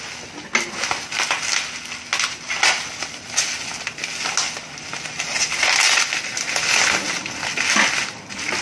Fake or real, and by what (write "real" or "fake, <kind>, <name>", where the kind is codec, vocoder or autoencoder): real